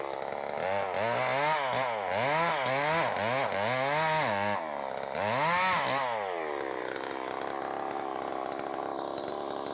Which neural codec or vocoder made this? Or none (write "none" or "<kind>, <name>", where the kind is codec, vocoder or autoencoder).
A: none